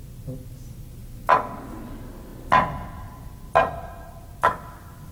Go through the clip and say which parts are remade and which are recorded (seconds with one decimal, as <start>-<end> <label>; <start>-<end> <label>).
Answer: 0.0-5.1 recorded